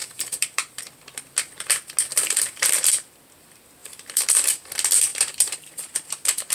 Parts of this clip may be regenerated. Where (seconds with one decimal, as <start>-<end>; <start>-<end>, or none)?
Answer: 0.0-0.8; 2.1-3.1; 3.8-4.6; 5.1-6.5